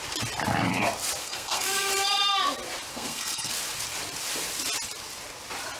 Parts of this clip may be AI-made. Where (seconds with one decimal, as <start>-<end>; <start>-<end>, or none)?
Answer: 1.2-1.9; 2.9-3.5